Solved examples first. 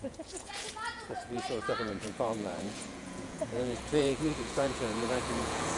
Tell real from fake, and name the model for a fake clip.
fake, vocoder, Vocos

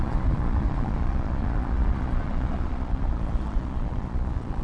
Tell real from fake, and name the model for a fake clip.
fake, vocoder, Vocos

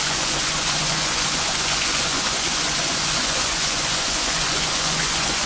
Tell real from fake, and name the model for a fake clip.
fake, vocoder, Vocos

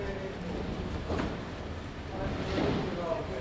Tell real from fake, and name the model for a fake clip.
real